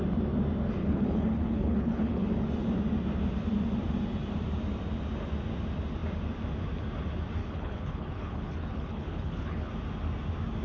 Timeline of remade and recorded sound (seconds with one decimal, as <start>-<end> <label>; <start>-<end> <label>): 0.0-0.8 recorded; 0.8-2.3 remade; 2.3-7.4 recorded; 7.4-9.7 remade; 9.7-10.6 recorded